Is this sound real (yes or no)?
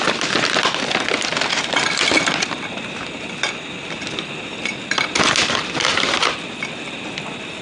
yes